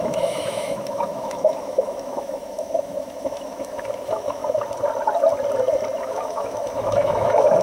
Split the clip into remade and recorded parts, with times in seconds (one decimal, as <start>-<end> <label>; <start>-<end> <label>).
0.0-4.4 remade; 4.4-6.0 recorded; 6.0-7.6 remade